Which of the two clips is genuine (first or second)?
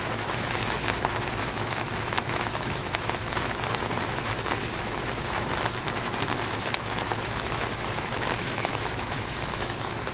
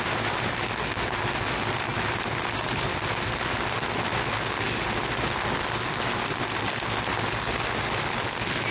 second